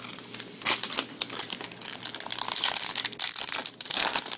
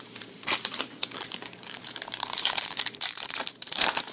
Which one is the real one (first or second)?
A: first